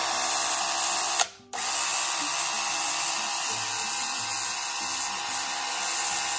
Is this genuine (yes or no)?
yes